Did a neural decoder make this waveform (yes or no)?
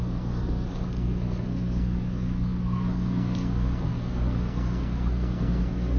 yes